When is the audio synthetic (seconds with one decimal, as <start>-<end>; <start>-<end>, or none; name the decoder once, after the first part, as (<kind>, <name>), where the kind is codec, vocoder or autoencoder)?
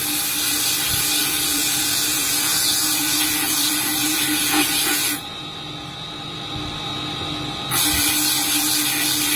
1.2-5.4 (vocoder, Vocos)